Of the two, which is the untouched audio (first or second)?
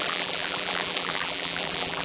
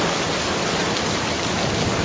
second